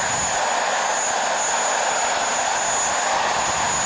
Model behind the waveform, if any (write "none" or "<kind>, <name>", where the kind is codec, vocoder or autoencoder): none